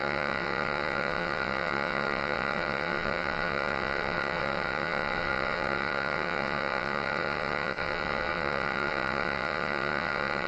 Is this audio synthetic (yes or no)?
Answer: yes